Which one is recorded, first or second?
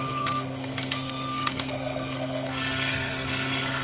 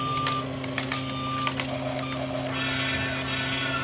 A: second